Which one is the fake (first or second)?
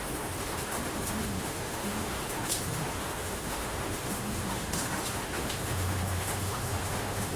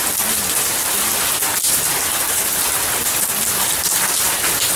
first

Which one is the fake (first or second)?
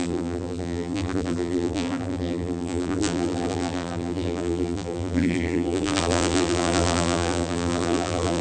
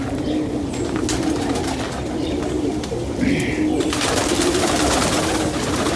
first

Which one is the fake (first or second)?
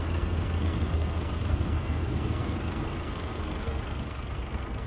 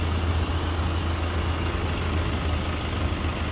first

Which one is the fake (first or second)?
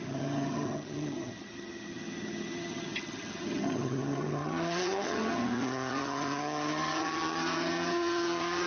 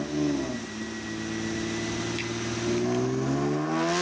first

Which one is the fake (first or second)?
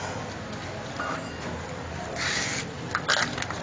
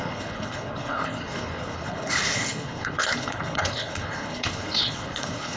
second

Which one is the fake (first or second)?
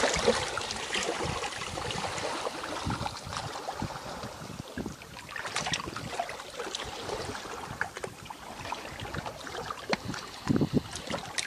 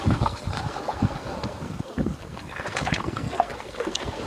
second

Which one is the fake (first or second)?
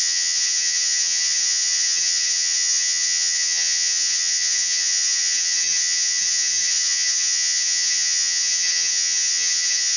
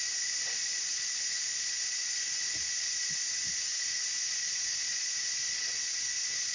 first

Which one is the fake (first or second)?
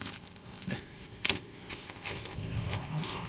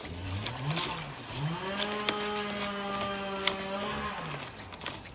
first